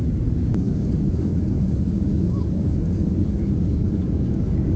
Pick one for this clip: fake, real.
fake